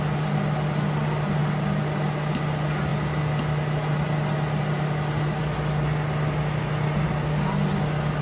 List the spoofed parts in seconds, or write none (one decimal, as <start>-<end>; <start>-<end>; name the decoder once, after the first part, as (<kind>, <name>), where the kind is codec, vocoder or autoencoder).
none